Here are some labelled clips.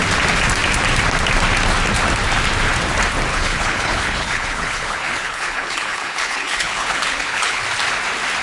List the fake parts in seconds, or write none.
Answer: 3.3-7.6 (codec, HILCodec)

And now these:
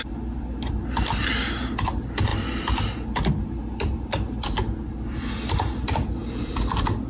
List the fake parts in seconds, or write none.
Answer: none

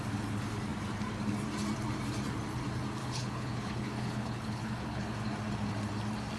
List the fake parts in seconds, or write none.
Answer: 3.0-5.1 (codec, HILCodec)